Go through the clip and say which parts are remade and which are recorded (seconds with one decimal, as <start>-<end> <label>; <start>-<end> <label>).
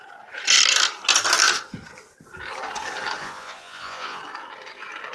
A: 0.0-3.2 recorded; 3.2-4.2 remade; 4.2-5.1 recorded